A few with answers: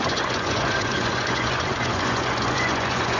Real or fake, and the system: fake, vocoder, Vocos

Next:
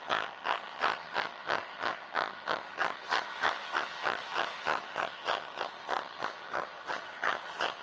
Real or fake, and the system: fake, vocoder, HiFi-GAN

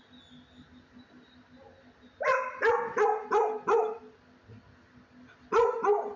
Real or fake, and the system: real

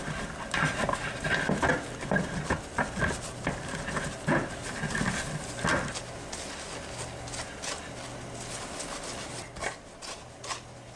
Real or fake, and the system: real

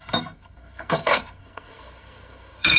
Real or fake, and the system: fake, codec, SNAC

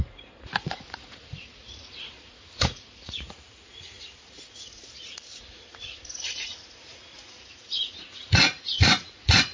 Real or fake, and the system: fake, vocoder, Vocos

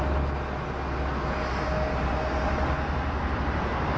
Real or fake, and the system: real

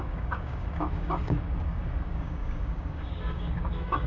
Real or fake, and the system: fake, codec, DAC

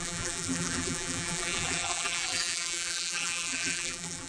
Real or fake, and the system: fake, vocoder, BigVGAN v2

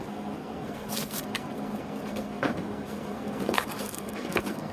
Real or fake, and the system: fake, codec, SNAC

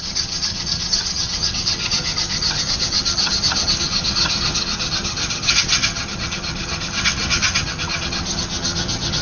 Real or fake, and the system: fake, vocoder, HiFi-GAN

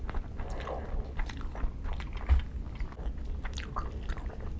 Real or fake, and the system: real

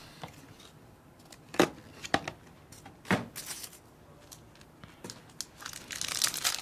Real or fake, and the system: real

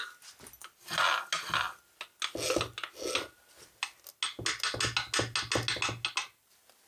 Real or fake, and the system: real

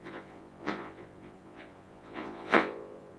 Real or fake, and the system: fake, vocoder, Vocos